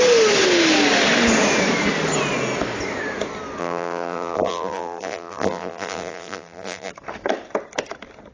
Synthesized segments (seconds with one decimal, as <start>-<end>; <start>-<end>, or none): 3.6-6.9